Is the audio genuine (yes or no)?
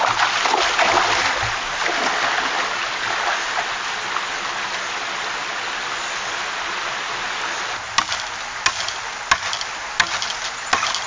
yes